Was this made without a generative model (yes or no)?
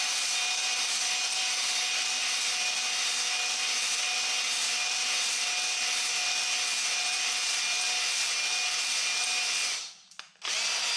yes